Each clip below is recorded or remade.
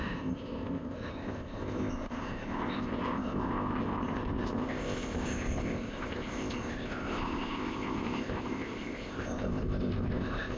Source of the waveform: remade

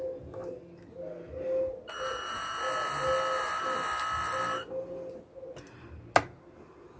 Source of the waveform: recorded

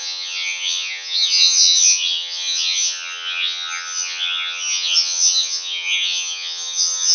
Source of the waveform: remade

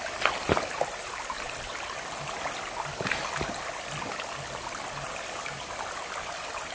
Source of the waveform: recorded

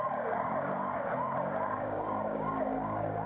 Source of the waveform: remade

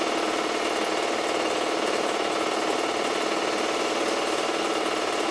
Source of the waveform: recorded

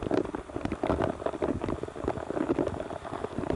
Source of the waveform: recorded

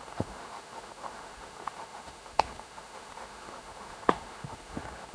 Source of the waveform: remade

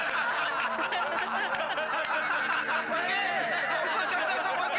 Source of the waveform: recorded